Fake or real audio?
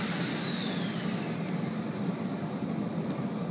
real